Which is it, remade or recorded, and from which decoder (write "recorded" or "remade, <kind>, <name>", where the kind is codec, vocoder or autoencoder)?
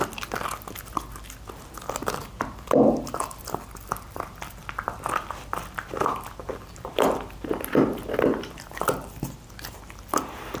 recorded